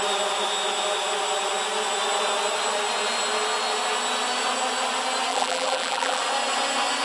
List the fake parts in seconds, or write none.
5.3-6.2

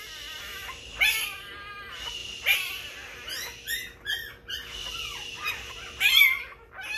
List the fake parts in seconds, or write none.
none

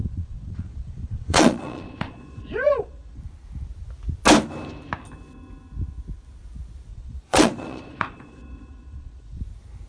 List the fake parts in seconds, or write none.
0.0-3.2; 6.9-9.4